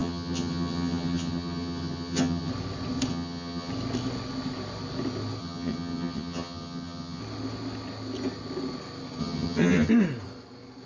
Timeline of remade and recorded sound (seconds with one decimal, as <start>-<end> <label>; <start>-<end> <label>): 0.0-2.5 remade; 2.5-3.1 recorded; 3.1-3.7 remade; 3.7-5.4 recorded; 5.4-7.2 remade; 7.2-9.2 recorded; 9.2-9.9 remade; 9.9-10.9 recorded